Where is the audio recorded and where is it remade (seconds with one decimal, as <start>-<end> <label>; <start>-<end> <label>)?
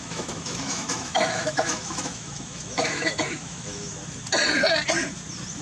0.0-3.9 remade; 3.9-5.6 recorded